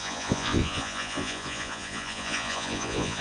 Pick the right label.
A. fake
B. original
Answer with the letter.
A